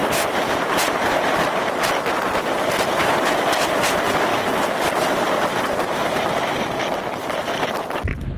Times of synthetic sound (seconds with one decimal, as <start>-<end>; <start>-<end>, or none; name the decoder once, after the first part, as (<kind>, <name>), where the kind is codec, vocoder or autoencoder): 0.0-1.3 (vocoder, BigVGAN v2)

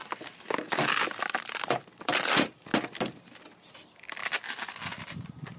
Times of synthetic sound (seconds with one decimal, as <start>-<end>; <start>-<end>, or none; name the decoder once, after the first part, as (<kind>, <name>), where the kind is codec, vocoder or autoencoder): 1.8-2.7 (vocoder, BigVGAN v2); 3.3-4.2